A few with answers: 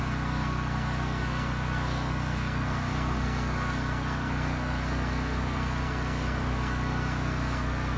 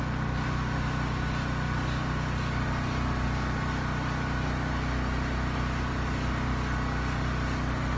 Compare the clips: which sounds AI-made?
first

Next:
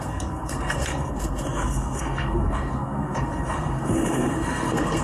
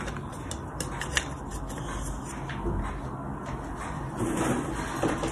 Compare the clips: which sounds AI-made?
first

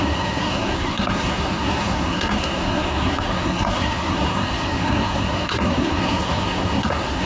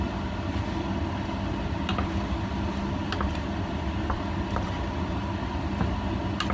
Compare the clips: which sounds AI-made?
first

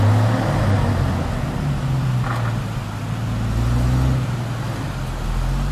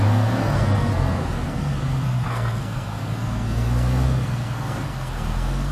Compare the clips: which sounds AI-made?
second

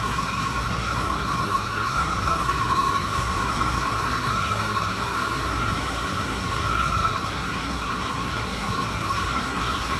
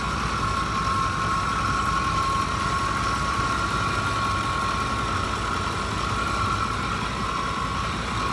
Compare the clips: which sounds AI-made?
first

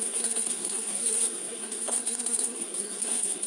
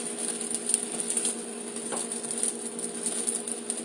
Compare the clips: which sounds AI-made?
first